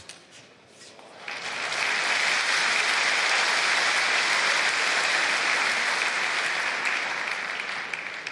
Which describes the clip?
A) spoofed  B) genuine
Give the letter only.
B